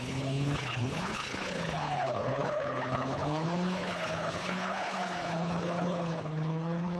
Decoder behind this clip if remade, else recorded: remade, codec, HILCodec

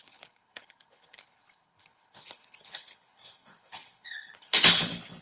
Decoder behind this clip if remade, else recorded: remade, codec, HILCodec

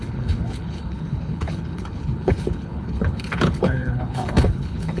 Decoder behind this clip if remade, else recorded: remade, codec, HILCodec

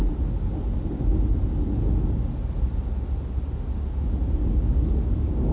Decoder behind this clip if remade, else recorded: recorded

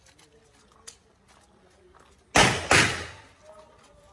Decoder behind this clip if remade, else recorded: recorded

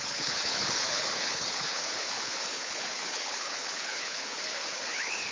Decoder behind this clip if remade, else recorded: remade, codec, HILCodec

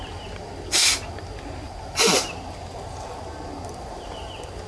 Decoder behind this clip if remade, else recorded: recorded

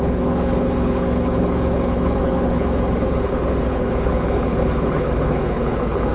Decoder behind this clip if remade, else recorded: remade, codec, HILCodec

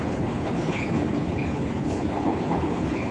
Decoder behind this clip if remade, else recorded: remade, codec, HILCodec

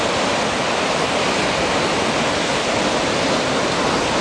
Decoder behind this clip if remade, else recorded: recorded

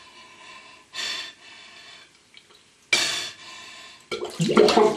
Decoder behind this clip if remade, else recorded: recorded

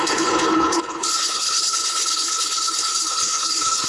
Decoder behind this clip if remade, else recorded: remade, codec, HILCodec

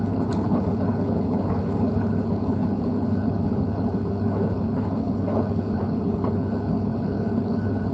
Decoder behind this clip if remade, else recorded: remade, codec, HILCodec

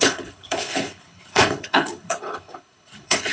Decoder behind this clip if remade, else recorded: remade, codec, HILCodec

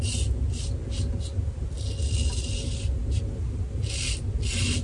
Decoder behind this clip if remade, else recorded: recorded